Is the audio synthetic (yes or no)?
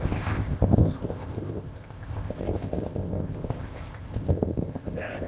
yes